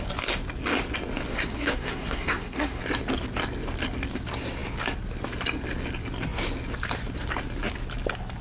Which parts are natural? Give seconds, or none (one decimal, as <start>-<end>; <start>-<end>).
0.0-1.3; 2.8-8.4